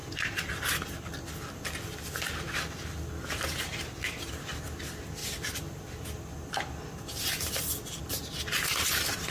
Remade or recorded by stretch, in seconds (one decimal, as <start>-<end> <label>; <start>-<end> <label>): 0.0-0.5 remade; 0.5-3.7 recorded; 3.7-4.5 remade; 4.5-5.2 recorded; 5.2-8.0 remade; 8.0-9.3 recorded